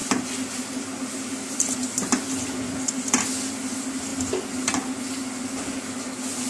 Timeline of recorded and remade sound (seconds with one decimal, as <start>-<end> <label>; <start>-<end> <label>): 0.0-6.5 recorded